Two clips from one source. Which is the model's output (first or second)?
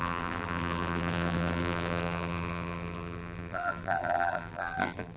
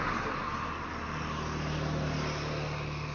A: first